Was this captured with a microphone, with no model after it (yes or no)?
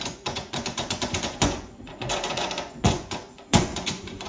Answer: no